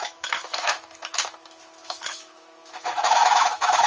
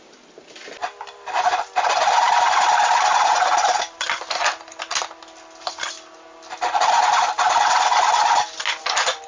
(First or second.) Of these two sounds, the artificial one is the first